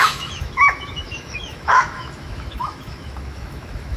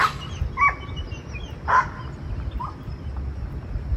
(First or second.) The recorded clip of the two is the second